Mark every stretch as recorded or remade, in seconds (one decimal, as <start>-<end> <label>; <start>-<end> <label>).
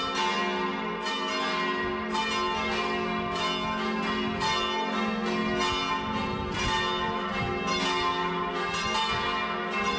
0.0-10.0 recorded